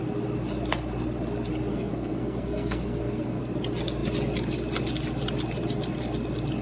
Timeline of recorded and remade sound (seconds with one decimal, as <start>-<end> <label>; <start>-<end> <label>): 0.0-1.7 recorded; 1.7-3.4 remade; 3.4-6.6 recorded